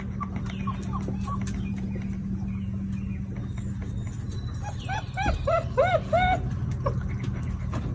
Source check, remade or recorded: recorded